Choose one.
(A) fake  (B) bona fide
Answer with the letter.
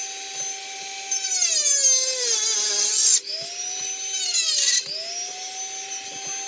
B